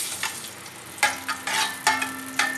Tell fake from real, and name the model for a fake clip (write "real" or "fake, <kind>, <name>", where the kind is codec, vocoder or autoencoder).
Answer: real